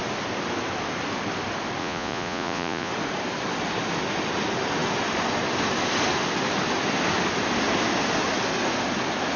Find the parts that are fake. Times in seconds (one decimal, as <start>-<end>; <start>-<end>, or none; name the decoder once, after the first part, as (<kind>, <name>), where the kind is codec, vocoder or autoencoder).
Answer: 1.8-2.9 (vocoder, Vocos)